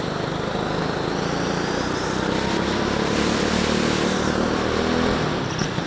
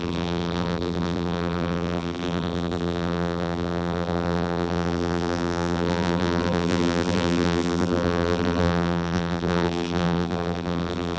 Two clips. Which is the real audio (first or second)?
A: first